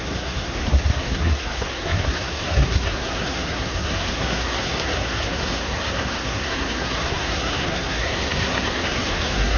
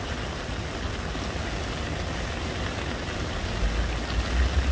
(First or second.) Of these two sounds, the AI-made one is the first